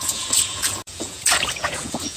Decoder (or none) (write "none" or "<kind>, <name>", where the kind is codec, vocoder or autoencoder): vocoder, Vocos